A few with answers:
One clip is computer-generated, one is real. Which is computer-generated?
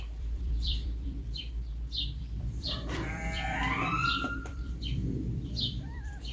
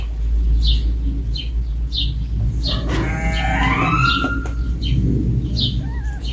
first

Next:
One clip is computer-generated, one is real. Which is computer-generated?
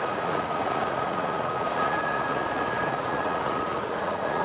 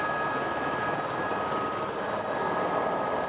first